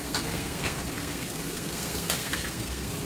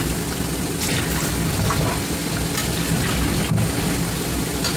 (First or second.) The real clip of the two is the second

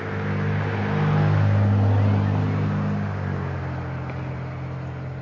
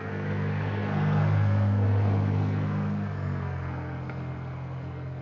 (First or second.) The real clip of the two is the first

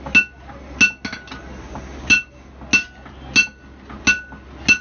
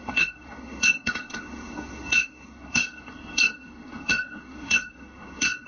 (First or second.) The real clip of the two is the first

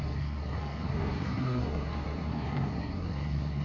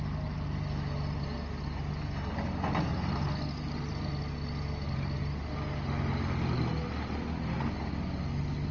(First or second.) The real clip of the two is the second